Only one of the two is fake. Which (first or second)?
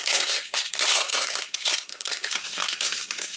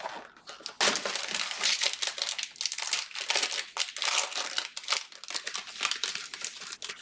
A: first